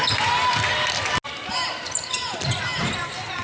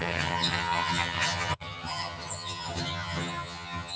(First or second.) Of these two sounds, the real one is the first